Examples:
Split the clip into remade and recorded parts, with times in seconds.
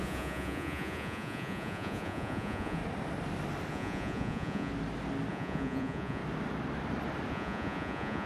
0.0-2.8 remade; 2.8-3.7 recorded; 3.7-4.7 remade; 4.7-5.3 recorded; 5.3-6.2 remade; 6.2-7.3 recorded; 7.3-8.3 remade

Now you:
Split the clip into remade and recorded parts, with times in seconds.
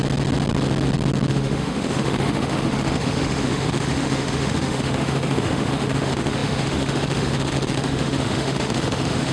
0.0-1.3 recorded; 1.3-9.3 remade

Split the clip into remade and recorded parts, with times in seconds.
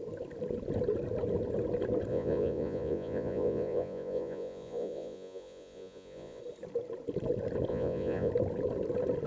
0.0-2.1 recorded; 2.1-6.4 remade; 6.4-7.7 recorded; 7.7-8.3 remade; 8.3-9.3 recorded